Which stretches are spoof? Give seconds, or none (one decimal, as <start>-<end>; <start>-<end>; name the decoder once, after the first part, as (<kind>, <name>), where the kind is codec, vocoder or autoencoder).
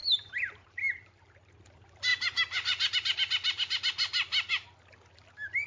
0.0-1.5 (vocoder, BigVGAN v2)